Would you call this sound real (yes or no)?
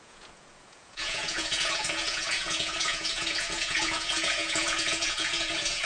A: no